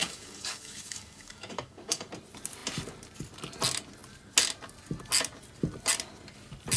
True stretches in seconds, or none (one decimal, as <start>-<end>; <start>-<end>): 2.1-6.8